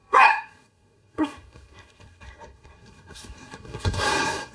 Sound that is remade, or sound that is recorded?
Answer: remade